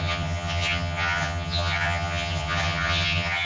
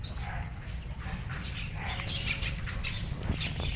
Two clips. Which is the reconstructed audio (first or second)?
first